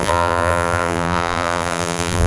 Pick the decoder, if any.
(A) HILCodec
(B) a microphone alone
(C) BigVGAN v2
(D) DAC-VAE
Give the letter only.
C